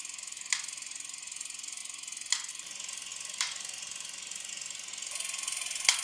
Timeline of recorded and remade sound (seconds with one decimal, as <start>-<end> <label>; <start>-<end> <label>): 0.0-3.1 recorded; 3.1-4.5 remade; 4.5-6.0 recorded